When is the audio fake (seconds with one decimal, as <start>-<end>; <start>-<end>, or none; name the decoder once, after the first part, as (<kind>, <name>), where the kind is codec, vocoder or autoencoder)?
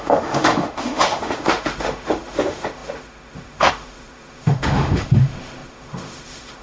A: 0.0-6.6 (autoencoder, DAC-VAE)